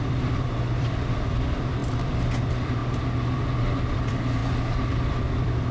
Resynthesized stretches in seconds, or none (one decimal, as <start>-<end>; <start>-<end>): 0.0-2.8; 3.9-4.4; 5.1-5.7